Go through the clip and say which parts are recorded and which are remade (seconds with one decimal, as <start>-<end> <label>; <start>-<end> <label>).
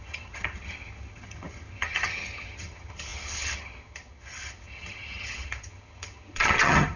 0.0-7.0 remade